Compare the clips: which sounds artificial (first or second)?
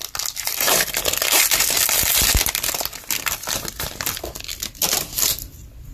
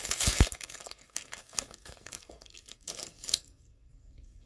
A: second